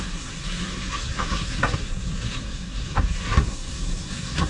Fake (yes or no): yes